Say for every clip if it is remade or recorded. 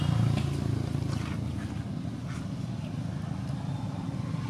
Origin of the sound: recorded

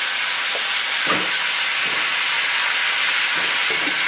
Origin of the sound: recorded